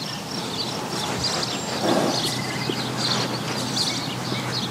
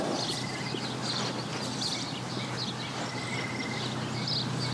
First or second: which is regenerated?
second